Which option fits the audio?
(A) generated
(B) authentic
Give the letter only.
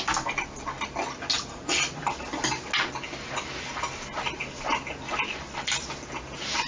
B